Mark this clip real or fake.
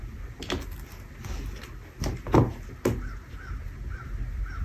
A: real